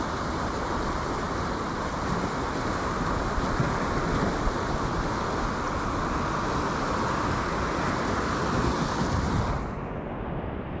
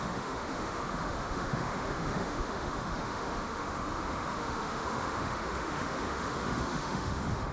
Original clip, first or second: first